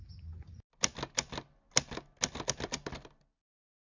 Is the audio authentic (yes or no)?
yes